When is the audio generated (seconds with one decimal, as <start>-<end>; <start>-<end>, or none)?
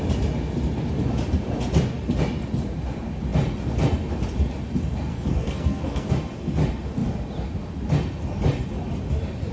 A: 5.1-6.1